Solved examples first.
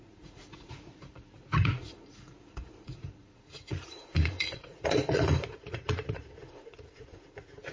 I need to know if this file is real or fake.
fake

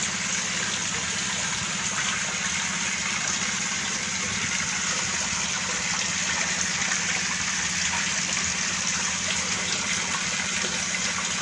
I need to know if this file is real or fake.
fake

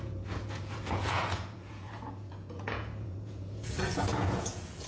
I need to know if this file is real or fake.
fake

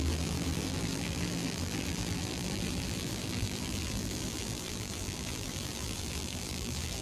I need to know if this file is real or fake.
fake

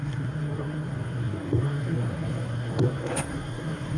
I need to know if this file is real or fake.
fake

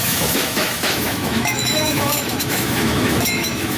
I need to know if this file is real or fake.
fake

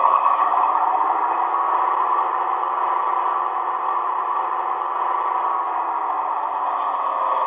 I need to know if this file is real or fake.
real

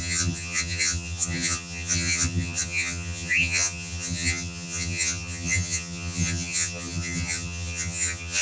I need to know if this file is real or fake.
fake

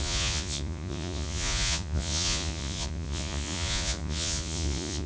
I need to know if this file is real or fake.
fake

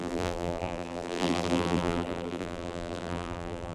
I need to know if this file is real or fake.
fake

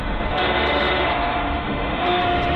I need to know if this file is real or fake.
fake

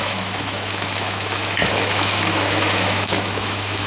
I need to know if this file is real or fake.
fake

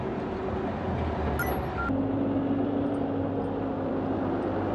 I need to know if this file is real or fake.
real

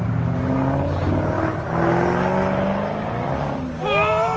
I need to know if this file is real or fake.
real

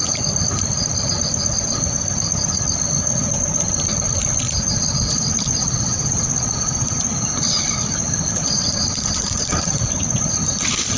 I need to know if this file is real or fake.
real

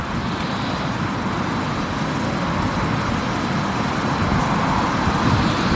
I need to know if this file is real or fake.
real